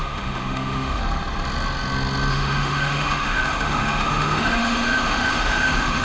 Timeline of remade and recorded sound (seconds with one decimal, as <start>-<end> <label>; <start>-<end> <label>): 0.0-1.0 remade; 1.0-2.3 recorded; 2.3-6.0 remade